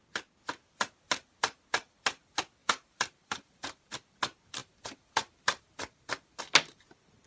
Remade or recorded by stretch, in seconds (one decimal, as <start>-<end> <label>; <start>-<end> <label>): 0.0-2.6 recorded; 2.6-3.9 remade; 3.9-4.6 recorded; 4.6-6.4 remade; 6.4-7.3 recorded